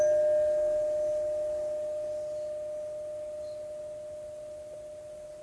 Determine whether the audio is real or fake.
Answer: real